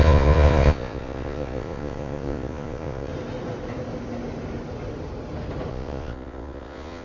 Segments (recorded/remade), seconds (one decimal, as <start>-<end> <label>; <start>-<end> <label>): 0.0-3.1 remade; 3.1-5.7 recorded; 5.7-7.0 remade